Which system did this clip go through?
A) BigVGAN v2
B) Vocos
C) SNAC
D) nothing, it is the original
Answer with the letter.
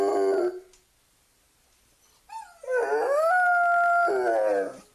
D